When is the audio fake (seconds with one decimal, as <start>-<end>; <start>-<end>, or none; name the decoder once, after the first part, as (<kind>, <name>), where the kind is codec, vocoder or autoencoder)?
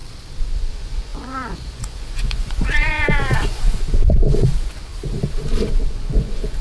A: 0.7-4.9 (vocoder, Vocos); 5.7-6.6